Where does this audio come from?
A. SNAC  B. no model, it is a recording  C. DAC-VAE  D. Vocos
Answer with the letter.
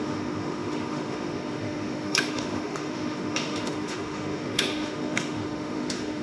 C